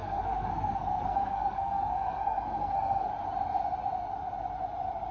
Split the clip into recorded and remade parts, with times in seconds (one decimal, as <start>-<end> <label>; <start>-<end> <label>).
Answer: 0.0-3.1 remade; 3.1-5.1 recorded